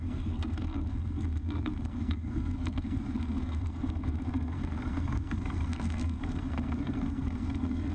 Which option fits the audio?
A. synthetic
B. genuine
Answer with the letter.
A